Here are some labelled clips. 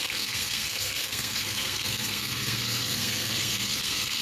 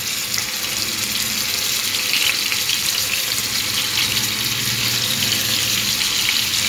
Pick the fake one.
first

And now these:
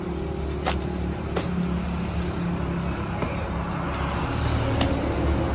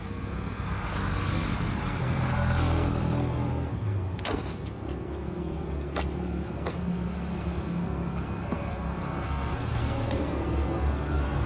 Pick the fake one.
second